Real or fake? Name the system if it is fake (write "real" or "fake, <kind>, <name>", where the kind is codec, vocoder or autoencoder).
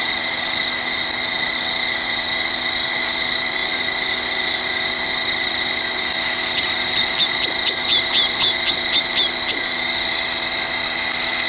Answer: real